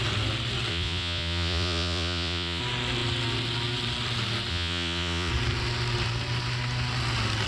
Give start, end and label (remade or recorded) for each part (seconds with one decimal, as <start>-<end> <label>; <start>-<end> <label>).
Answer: 0.0-0.7 recorded; 0.7-2.6 remade; 2.6-4.5 recorded; 4.5-5.3 remade; 5.3-7.5 recorded